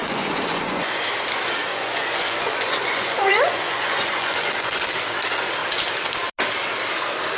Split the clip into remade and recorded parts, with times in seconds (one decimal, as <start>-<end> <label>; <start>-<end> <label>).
0.0-1.0 remade; 1.0-1.7 recorded; 1.7-4.9 remade; 4.9-7.4 recorded